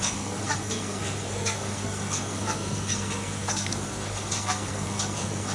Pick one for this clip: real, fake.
fake